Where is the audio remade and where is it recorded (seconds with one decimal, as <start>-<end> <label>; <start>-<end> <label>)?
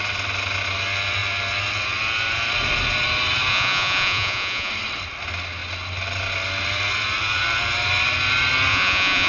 0.0-3.5 recorded; 3.5-4.7 remade; 4.7-8.7 recorded; 8.7-9.3 remade